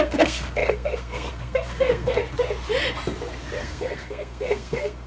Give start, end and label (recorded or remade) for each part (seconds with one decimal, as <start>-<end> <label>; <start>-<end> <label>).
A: 0.0-2.2 remade; 2.2-3.6 recorded; 3.6-5.1 remade